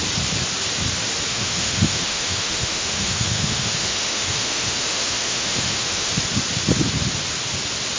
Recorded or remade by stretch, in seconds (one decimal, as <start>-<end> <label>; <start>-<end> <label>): 0.0-1.3 recorded; 1.3-6.1 remade; 6.1-8.0 recorded